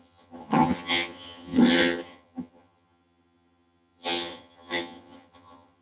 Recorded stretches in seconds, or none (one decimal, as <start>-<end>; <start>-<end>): none